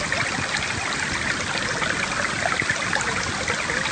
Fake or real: real